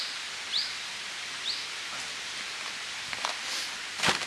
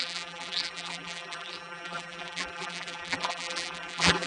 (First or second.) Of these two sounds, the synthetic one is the second